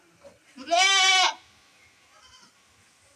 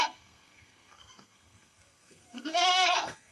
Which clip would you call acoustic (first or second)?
first